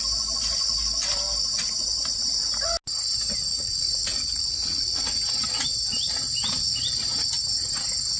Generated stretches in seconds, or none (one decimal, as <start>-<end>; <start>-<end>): 3.5-5.2